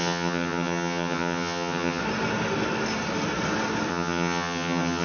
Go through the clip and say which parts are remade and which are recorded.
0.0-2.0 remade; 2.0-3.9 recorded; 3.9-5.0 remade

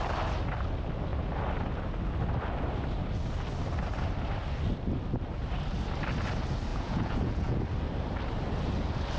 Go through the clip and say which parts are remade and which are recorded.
0.0-6.7 recorded; 6.7-7.6 remade; 7.6-9.2 recorded

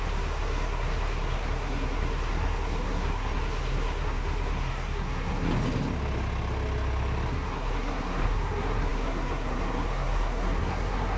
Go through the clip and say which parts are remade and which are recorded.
0.0-5.5 remade; 5.5-7.3 recorded; 7.3-11.2 remade

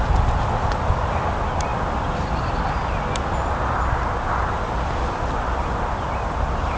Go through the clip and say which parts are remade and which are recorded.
0.0-6.8 recorded

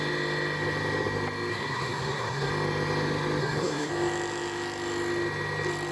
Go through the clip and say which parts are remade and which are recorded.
0.0-1.5 recorded; 1.5-2.5 remade; 2.5-3.4 recorded; 3.4-3.9 remade; 3.9-5.9 recorded

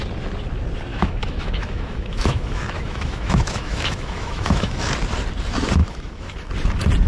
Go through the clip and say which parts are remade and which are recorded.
0.0-0.9 recorded; 0.9-4.9 remade; 4.9-5.8 recorded; 5.8-6.5 remade; 6.5-7.1 recorded

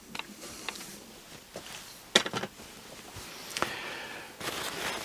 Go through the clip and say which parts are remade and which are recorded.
0.0-5.0 recorded

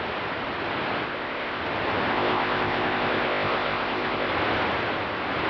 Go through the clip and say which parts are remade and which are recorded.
0.0-1.1 recorded; 1.1-1.6 remade; 1.6-2.1 recorded; 2.1-4.3 remade; 4.3-5.5 recorded